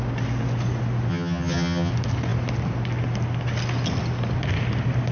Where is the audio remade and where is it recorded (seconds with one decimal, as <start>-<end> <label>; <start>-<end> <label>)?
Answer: 0.0-1.1 recorded; 1.1-1.9 remade; 1.9-5.1 recorded